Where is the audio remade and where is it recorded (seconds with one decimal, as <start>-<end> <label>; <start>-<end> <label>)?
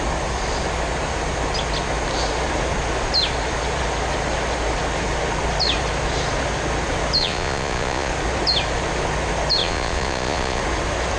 0.0-7.2 recorded; 7.2-8.1 remade; 8.1-9.6 recorded; 9.6-10.6 remade; 10.6-11.2 recorded